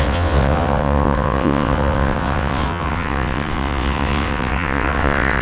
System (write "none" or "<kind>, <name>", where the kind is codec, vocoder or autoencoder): vocoder, WaveNeXt